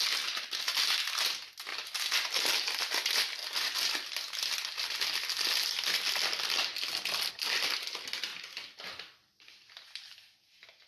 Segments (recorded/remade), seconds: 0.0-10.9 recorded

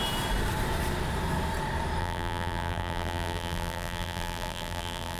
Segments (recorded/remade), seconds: 0.0-2.0 recorded; 2.0-5.2 remade

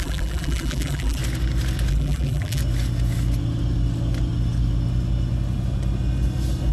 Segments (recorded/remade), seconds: 0.0-1.2 remade; 1.2-1.9 recorded; 1.9-2.6 remade; 2.6-6.7 recorded

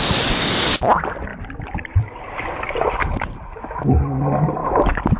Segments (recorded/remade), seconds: 0.0-1.3 recorded; 1.3-2.3 remade; 2.3-3.0 recorded; 3.0-3.6 remade; 3.6-4.6 recorded; 4.6-5.2 remade

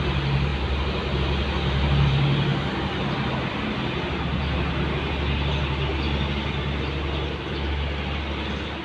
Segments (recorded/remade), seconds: 0.0-8.8 recorded

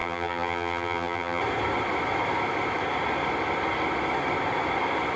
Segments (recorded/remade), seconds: 0.0-1.4 remade; 1.4-5.2 recorded